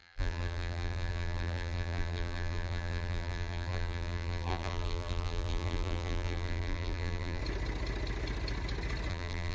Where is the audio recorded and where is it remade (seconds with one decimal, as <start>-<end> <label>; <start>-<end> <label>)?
0.0-7.4 remade; 7.4-9.1 recorded; 9.1-9.5 remade